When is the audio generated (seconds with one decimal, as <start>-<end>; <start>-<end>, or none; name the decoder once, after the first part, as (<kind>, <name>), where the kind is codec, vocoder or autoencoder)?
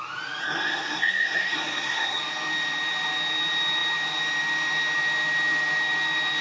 0.4-2.2 (codec, SNAC)